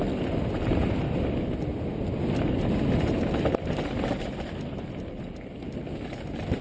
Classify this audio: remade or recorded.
recorded